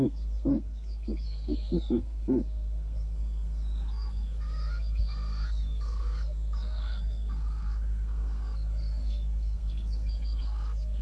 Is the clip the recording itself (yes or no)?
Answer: no